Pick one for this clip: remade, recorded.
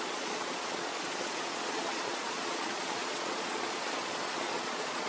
remade